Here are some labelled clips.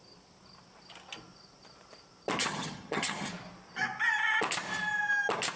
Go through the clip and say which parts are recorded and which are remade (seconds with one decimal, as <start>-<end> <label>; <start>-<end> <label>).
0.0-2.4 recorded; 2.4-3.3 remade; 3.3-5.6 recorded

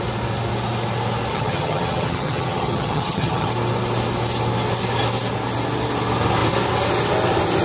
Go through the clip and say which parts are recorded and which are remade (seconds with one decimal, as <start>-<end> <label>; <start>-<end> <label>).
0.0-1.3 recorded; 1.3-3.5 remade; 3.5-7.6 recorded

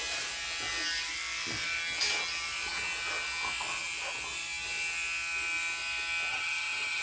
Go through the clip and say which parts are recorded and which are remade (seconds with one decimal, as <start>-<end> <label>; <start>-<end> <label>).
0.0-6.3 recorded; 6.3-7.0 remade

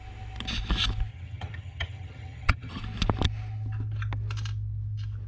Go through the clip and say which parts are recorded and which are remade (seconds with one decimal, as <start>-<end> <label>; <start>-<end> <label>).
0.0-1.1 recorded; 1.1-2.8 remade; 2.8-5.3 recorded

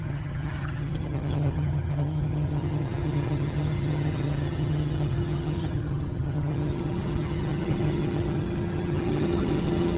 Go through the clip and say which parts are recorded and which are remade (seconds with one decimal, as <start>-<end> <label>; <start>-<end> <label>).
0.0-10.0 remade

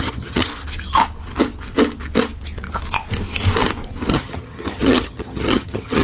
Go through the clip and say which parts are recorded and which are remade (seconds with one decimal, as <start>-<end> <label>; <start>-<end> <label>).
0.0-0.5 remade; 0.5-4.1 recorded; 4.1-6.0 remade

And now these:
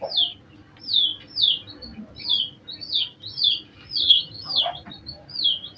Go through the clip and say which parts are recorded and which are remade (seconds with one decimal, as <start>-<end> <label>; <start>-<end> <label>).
0.0-4.0 recorded; 4.0-4.6 remade; 4.6-5.8 recorded